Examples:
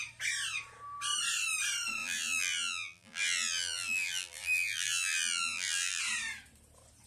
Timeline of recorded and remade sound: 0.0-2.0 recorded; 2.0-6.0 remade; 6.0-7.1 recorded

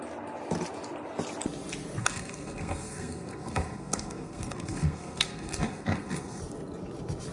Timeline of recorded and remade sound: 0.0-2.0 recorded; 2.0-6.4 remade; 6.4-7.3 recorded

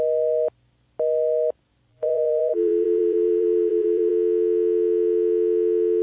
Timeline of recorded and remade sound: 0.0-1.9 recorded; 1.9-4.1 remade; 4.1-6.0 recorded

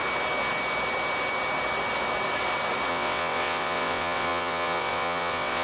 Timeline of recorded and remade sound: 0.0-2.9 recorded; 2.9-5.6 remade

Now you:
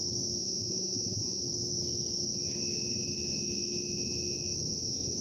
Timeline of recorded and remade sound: 0.0-0.4 recorded; 0.4-1.4 remade; 1.4-5.2 recorded